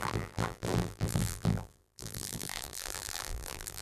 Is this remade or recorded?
remade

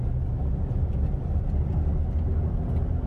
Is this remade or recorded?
recorded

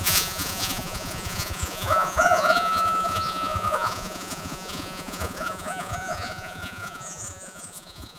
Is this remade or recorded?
remade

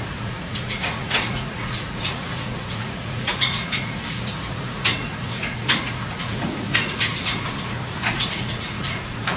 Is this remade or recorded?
remade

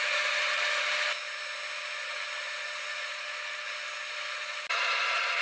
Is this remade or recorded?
recorded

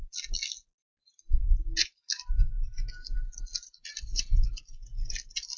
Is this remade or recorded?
recorded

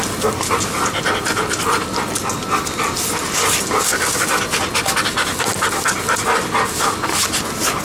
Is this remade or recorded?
recorded